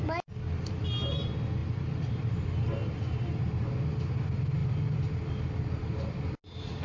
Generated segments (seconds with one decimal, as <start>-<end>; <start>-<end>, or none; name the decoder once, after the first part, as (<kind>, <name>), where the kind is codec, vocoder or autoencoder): 1.6-3.4 (vocoder, BigVGAN v2)